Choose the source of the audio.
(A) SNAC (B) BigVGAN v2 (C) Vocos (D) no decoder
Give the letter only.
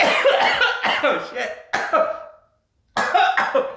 D